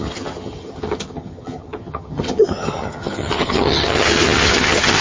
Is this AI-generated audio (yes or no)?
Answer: yes